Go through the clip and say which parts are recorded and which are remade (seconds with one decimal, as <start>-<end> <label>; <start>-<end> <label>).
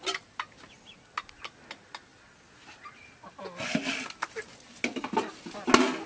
0.0-6.1 recorded